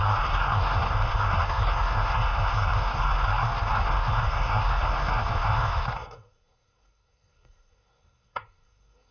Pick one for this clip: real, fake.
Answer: fake